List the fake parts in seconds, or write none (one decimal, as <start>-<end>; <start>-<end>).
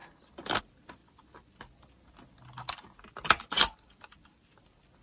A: none